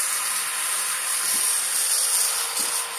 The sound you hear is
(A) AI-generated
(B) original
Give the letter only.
B